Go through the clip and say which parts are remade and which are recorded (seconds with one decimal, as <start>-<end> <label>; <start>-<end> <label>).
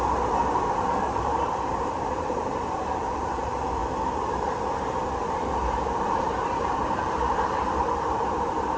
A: 0.0-3.8 remade; 3.8-5.1 recorded; 5.1-8.8 remade